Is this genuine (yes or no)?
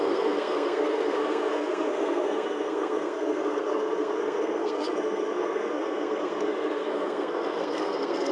no